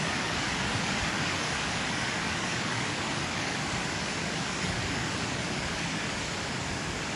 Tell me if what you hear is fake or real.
fake